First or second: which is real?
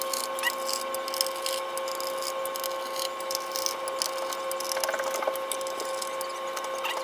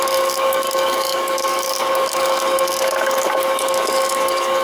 first